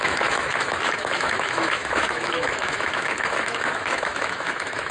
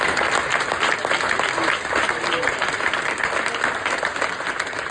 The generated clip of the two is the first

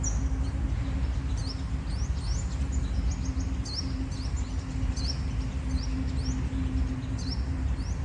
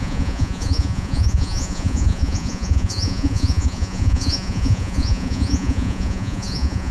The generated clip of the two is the second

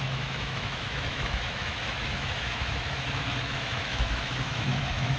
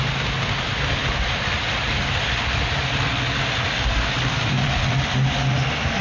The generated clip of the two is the first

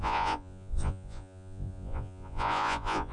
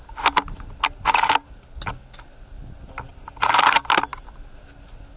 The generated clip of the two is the first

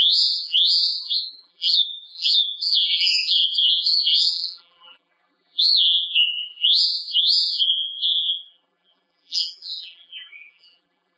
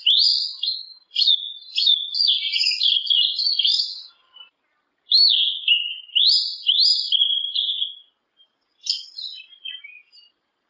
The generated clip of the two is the first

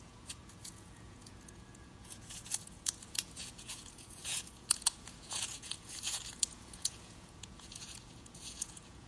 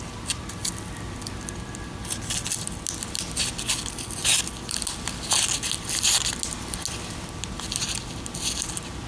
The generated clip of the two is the first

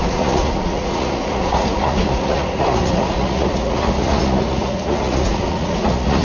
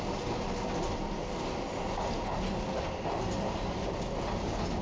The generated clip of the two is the first